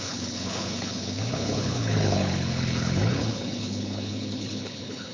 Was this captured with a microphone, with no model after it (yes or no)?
no